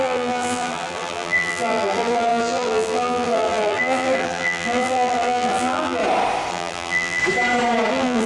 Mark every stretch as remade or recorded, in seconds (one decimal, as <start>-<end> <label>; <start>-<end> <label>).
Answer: 0.0-6.0 remade; 6.0-6.5 recorded; 6.5-7.2 remade; 7.2-7.9 recorded; 7.9-8.3 remade